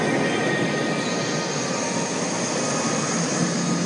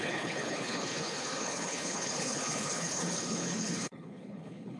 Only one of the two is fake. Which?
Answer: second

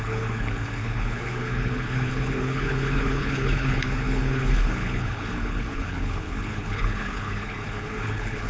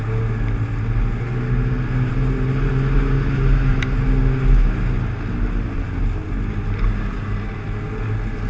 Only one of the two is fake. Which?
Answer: first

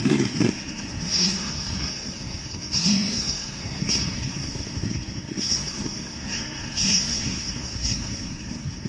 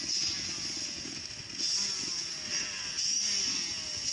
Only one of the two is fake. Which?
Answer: first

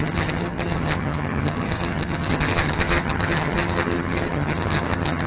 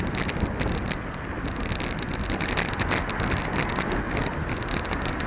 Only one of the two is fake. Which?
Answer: first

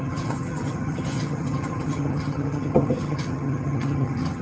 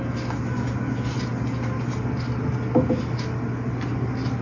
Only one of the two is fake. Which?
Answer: first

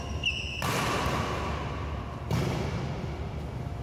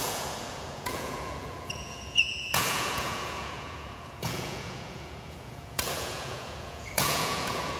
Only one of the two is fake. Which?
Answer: second